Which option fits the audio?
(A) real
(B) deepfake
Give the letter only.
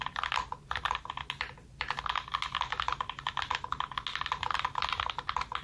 A